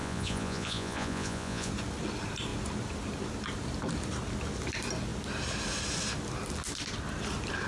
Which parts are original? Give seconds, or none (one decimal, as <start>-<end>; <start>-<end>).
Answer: 1.7-7.7